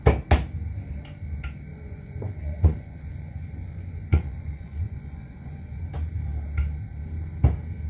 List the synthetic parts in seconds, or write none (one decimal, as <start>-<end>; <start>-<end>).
1.7-5.8